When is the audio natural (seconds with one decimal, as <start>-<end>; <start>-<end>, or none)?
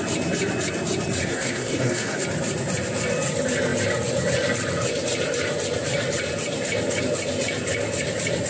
0.0-1.2; 2.2-8.5